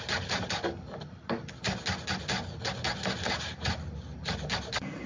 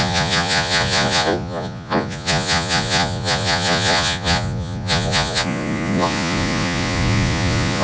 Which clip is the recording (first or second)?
first